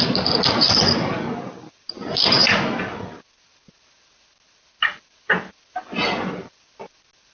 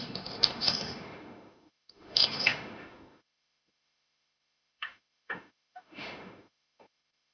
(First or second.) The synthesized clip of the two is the second